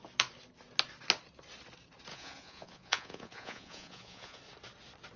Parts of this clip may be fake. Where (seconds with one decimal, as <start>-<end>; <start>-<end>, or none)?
2.1-4.4